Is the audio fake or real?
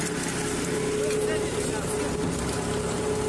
real